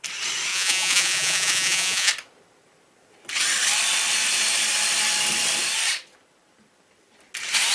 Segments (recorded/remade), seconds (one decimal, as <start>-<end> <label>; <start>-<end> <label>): 0.0-0.5 recorded; 0.5-2.1 remade; 2.1-7.7 recorded